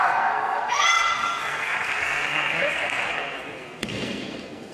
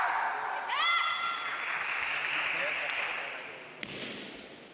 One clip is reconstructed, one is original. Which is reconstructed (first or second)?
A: first